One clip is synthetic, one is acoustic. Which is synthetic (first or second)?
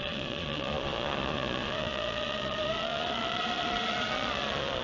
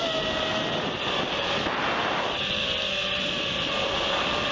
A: first